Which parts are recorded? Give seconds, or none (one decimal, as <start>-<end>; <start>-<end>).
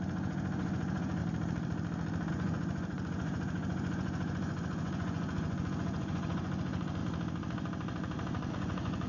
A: 1.2-2.3; 7.0-8.5